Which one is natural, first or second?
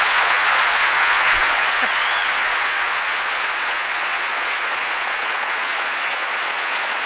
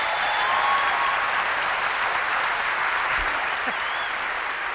second